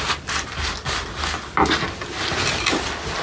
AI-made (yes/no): no